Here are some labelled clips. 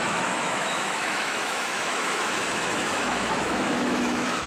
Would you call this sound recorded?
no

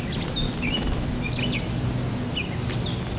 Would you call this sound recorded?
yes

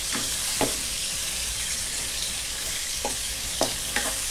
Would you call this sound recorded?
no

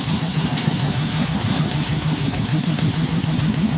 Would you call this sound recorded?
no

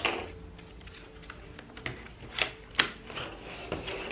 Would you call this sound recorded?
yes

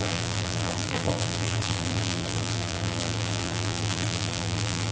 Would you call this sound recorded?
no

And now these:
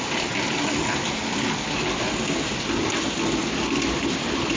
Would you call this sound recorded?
yes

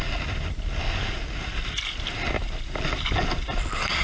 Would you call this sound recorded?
yes